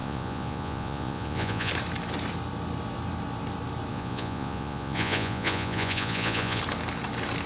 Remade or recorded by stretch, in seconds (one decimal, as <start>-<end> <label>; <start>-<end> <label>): 0.0-1.7 remade; 1.7-3.9 recorded; 3.9-6.6 remade; 6.6-7.5 recorded